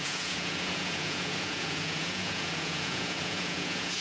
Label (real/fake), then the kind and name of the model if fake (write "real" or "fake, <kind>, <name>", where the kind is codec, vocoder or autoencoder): fake, vocoder, Vocos